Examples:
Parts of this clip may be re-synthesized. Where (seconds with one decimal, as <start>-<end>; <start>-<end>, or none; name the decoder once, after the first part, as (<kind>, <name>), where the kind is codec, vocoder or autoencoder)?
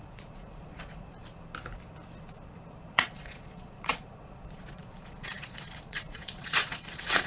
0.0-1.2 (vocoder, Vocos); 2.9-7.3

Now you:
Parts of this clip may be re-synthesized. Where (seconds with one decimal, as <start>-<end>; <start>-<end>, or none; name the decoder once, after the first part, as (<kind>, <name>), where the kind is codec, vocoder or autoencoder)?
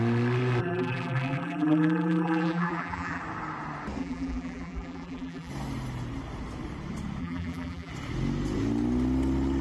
0.6-3.2 (vocoder, BigVGAN v2); 4.0-5.5; 7.2-7.9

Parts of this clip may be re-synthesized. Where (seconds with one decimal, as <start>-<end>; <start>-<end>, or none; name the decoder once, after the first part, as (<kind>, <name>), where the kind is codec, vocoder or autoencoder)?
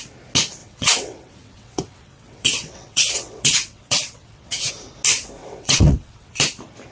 0.6-4.7 (vocoder, WaveNeXt); 5.4-6.3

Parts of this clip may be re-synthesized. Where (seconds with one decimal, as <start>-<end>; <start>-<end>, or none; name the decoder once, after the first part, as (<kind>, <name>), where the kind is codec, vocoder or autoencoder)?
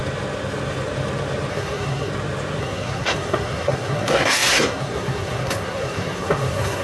1.5-2.1 (codec, SNAC); 2.6-6.8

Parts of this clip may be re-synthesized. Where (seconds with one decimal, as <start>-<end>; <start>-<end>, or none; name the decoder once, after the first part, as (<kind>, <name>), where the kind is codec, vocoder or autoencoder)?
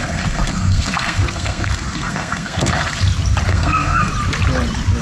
0.0-3.0 (codec, SNAC); 3.5-4.1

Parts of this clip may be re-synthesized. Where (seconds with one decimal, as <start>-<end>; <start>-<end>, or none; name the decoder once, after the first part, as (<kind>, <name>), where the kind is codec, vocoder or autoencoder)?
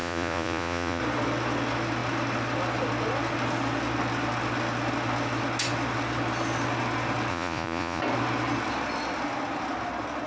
0.0-1.0 (vocoder, Vocos); 7.3-8.0